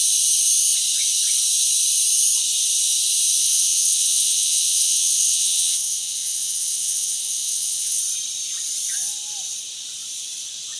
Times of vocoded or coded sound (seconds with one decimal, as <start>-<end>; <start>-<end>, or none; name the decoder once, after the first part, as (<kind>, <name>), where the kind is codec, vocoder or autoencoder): 3.4-8.0 (vocoder, WaveNeXt)